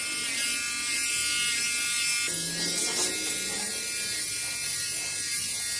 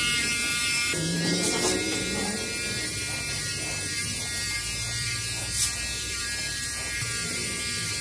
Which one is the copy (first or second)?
second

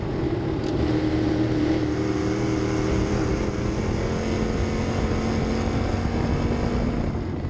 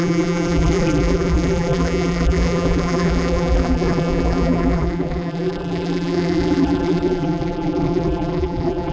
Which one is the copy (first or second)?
second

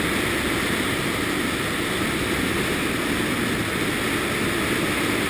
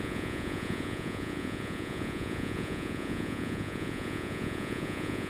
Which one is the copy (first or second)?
second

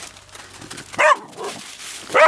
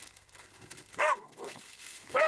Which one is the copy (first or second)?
second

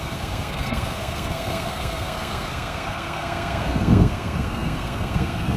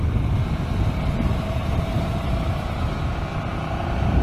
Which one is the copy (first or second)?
first